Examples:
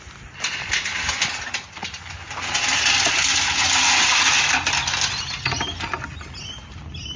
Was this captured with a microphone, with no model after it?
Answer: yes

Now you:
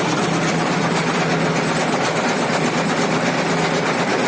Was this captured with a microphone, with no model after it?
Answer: yes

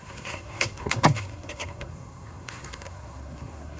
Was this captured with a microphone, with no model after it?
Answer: no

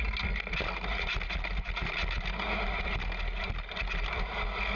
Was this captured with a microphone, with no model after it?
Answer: yes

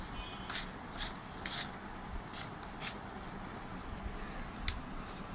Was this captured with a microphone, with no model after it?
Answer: yes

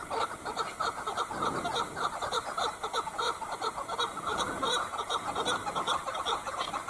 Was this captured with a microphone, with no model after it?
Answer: yes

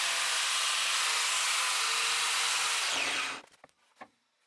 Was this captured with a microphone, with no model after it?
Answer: yes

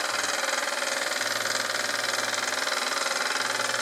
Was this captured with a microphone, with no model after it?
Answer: yes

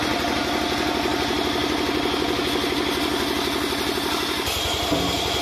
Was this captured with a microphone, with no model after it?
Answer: yes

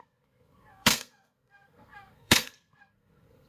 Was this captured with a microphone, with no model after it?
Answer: no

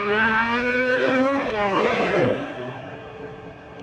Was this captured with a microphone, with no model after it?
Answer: no